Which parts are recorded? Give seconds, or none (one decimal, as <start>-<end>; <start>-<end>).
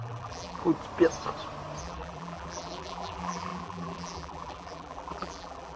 0.6-1.8